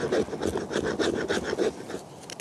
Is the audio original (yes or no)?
yes